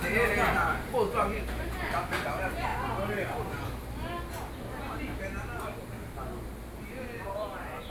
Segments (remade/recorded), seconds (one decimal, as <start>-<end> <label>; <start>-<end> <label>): 0.0-2.7 remade; 2.7-6.6 recorded; 6.6-7.9 remade